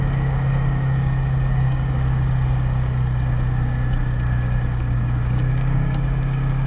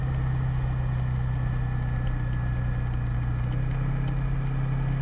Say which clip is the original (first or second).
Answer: second